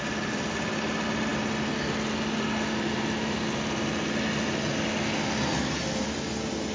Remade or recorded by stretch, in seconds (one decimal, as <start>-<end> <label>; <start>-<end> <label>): 0.0-6.7 recorded